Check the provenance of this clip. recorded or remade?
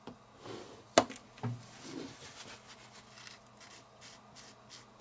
recorded